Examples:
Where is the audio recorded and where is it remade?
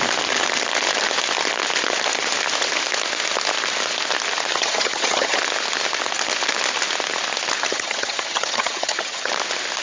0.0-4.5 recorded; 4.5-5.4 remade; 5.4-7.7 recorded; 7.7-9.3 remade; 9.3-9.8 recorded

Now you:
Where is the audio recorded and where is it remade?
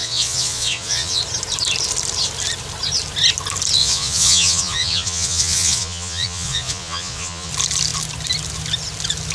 0.0-1.2 remade; 1.2-3.8 recorded; 3.8-7.5 remade; 7.5-9.3 recorded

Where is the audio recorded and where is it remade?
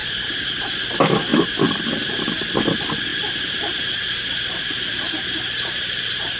0.0-1.3 remade; 1.3-1.9 recorded; 1.9-6.4 remade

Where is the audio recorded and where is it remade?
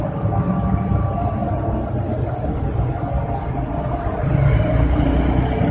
0.0-1.4 recorded; 1.4-4.6 remade; 4.6-5.7 recorded